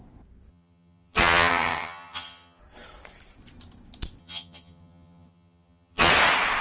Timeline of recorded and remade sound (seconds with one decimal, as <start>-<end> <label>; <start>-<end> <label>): 0.0-0.5 recorded; 0.5-2.6 remade; 2.6-4.2 recorded; 4.2-6.1 remade; 6.1-6.6 recorded